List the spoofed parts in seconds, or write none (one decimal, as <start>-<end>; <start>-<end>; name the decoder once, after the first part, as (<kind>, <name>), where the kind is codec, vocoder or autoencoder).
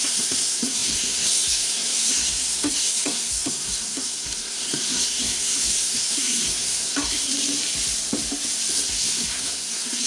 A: 0.0-7.3 (codec, SNAC); 8.7-10.1